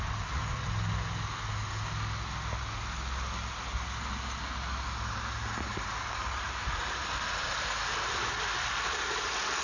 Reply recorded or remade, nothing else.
recorded